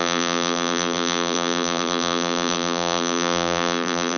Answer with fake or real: fake